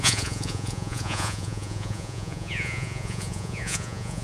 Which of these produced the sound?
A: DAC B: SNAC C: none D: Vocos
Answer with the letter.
D